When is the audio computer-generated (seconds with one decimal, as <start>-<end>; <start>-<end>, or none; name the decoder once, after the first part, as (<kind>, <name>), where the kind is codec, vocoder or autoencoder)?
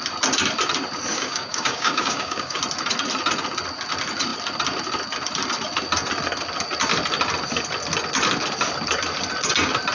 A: 1.1-2.6 (codec, DAC)